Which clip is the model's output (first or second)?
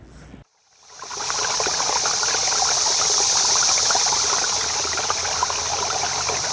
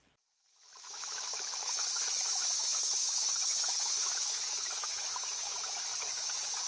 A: second